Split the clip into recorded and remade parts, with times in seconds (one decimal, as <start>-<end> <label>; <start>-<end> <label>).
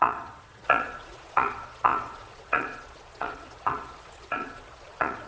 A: 0.0-5.3 remade